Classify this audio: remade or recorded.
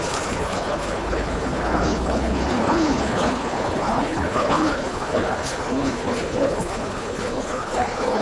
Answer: remade